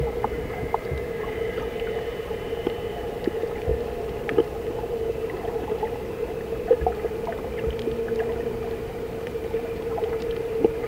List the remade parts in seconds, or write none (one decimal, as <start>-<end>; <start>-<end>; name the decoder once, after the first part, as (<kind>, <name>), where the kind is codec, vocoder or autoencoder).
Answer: 0.0-3.7 (vocoder, BigVGAN v2); 8.9-10.9